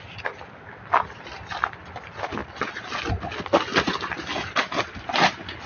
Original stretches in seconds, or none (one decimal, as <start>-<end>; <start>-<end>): 0.0-5.7